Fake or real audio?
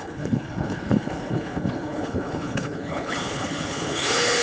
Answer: fake